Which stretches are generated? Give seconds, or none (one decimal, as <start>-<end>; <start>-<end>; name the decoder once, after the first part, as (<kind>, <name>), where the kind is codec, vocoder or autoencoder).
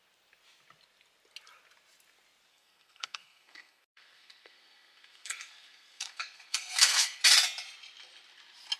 2.5-7.2 (codec, SNAC)